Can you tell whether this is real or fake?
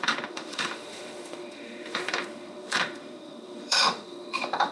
fake